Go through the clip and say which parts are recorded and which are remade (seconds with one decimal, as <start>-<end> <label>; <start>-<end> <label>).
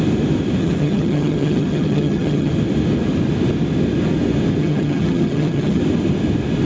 0.0-0.6 recorded; 0.6-2.5 remade; 2.5-4.6 recorded; 4.6-5.8 remade; 5.8-6.6 recorded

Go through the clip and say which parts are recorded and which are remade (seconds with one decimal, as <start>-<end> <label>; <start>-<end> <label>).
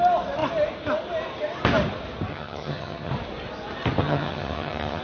0.0-2.3 recorded; 2.3-3.1 remade; 3.1-4.0 recorded; 4.0-5.0 remade